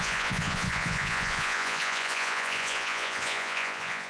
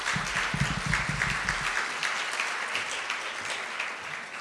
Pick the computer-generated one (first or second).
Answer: first